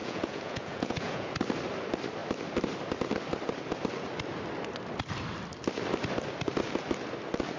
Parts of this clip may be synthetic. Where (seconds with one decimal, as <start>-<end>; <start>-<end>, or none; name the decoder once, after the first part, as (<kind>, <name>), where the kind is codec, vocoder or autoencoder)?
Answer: 0.0-1.3 (vocoder, Vocos)